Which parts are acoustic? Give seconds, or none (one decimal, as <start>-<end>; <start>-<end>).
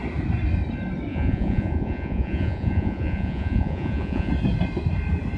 0.0-1.1; 4.3-5.4